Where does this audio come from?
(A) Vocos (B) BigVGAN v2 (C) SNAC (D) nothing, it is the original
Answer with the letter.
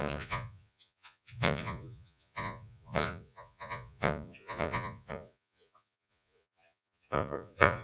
A